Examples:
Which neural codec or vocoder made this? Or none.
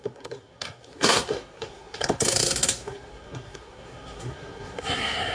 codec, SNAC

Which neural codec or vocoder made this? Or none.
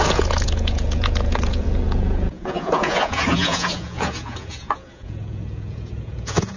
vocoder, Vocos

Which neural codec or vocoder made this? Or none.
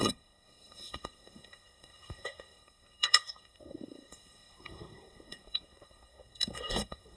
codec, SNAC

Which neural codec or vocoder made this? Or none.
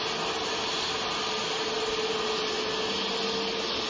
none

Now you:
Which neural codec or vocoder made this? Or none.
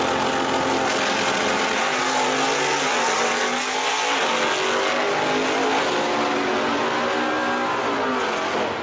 none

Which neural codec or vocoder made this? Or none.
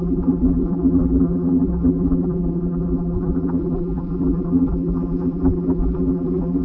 vocoder, BigVGAN v2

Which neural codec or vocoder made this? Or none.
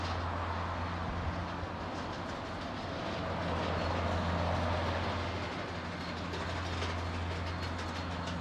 none